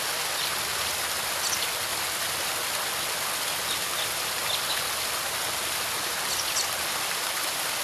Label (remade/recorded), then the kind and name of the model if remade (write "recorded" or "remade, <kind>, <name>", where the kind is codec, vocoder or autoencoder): recorded